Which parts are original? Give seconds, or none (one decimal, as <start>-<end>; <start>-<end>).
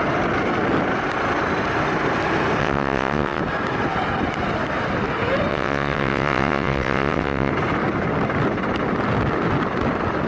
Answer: 0.0-2.6; 3.4-5.5; 7.5-10.3